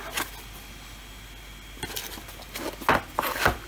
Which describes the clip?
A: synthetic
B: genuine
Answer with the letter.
B